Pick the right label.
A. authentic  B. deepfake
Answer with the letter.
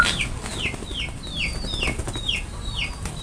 A